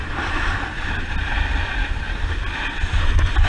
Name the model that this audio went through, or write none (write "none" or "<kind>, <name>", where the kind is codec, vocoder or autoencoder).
none